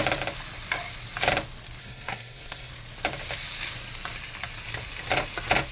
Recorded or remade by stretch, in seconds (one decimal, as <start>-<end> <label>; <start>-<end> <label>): 0.0-1.8 recorded; 1.8-2.7 remade; 2.7-5.7 recorded